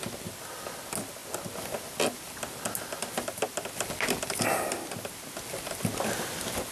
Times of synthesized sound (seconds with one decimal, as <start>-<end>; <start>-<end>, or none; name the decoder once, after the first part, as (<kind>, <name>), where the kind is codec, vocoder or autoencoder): none